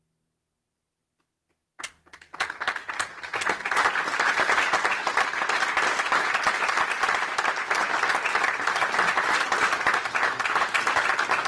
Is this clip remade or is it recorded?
recorded